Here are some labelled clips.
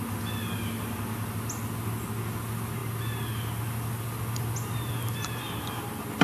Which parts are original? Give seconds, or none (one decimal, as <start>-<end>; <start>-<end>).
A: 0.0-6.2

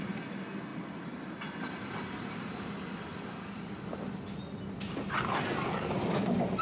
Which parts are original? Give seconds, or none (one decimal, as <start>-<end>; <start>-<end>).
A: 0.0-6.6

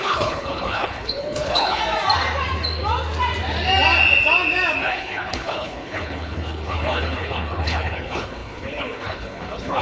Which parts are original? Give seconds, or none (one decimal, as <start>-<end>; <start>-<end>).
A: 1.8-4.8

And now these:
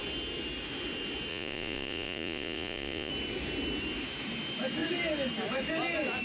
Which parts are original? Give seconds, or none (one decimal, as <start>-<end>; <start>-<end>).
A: 0.0-1.3; 3.1-6.2

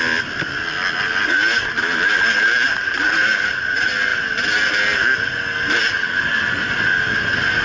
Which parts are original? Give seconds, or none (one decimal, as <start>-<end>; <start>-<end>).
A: 0.0-7.6

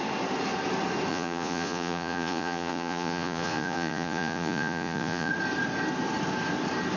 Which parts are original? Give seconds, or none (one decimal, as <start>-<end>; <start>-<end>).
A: 0.0-1.1; 5.3-7.0

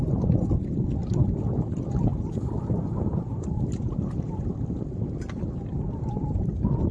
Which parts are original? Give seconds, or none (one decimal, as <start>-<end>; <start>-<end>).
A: 0.0-6.9